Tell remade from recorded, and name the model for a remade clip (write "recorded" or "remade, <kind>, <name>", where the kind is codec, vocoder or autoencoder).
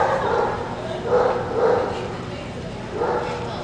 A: recorded